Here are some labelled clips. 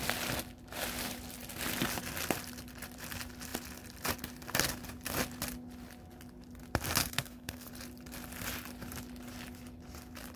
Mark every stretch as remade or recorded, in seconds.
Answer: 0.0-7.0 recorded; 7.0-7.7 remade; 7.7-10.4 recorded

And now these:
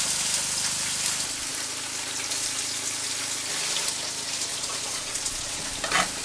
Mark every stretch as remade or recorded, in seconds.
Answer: 0.0-4.5 recorded; 4.5-5.6 remade; 5.6-6.2 recorded

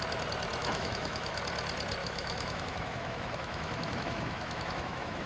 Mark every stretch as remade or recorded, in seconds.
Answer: 0.0-0.6 recorded; 0.6-1.4 remade; 1.4-2.0 recorded; 2.0-5.3 remade

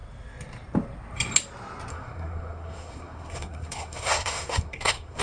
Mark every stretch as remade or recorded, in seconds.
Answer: 0.0-1.9 recorded; 1.9-5.2 remade

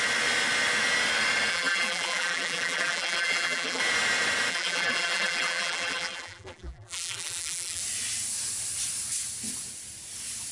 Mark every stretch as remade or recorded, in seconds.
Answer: 0.0-1.5 recorded; 1.5-3.8 remade; 3.8-4.5 recorded; 4.5-7.8 remade; 7.8-10.5 recorded

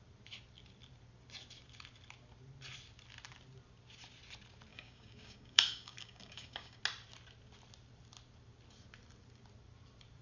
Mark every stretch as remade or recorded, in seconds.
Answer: 0.0-4.7 recorded; 4.7-6.8 remade; 6.8-10.2 recorded

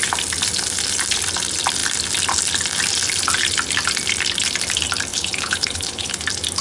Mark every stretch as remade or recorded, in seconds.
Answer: 0.0-5.1 recorded; 5.1-6.1 remade; 6.1-6.6 recorded

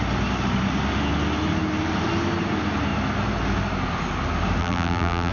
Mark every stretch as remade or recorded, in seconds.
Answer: 0.0-4.6 recorded; 4.6-5.3 remade